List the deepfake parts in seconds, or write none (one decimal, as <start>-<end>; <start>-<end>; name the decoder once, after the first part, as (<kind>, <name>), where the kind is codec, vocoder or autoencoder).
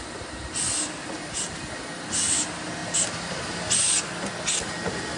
none